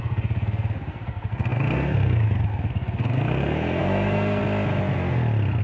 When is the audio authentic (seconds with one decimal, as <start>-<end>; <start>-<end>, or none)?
4.4-5.6